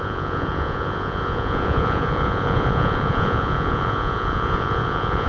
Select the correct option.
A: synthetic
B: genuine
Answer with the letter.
A